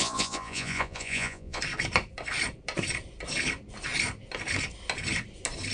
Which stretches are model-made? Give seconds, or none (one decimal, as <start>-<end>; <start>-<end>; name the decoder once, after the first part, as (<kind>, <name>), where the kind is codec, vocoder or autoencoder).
0.0-1.6 (vocoder, Vocos)